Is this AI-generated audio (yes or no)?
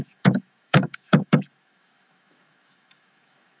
yes